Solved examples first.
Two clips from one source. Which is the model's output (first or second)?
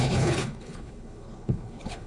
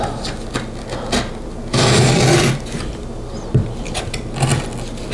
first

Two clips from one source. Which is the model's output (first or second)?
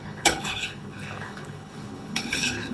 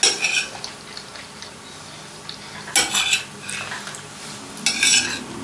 first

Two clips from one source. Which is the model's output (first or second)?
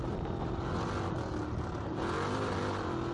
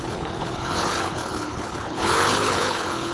second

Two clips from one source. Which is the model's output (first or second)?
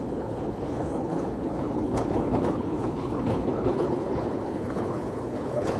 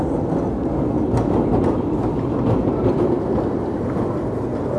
first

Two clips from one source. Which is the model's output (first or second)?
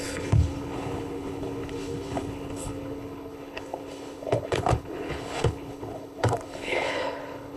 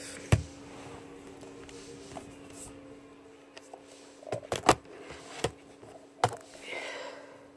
first